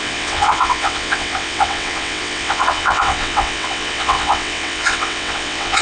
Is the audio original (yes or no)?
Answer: no